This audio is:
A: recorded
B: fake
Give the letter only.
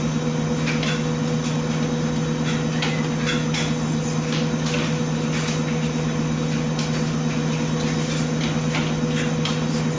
A